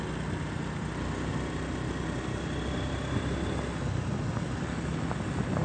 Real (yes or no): yes